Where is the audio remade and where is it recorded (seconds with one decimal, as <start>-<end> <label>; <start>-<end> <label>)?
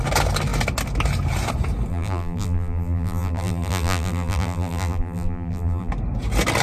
0.0-1.9 recorded; 1.9-5.9 remade; 5.9-6.6 recorded